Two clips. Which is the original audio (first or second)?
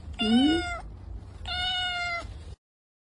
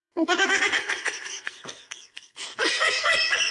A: first